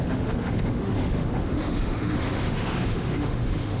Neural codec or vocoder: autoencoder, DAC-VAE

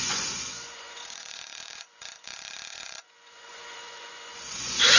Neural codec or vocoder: vocoder, Vocos